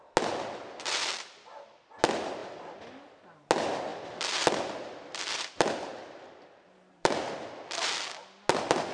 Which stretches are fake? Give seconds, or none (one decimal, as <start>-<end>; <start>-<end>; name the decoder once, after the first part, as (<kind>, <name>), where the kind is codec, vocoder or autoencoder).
2.4-3.0 (vocoder, BigVGAN v2); 3.9-7.9

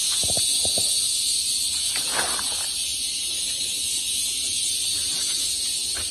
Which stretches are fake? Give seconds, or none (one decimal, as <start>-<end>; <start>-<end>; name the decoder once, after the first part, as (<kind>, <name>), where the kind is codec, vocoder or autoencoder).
0.0-1.1 (vocoder, Vocos); 1.7-6.1

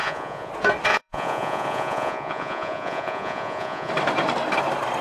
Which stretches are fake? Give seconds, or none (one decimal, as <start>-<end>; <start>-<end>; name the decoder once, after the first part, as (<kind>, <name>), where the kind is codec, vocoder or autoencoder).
0.0-0.5 (vocoder, Vocos); 0.9-3.9